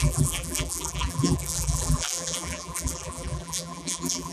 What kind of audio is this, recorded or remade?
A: remade